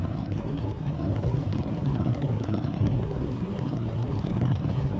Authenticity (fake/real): fake